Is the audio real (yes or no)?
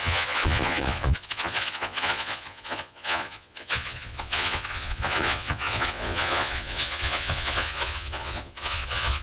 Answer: no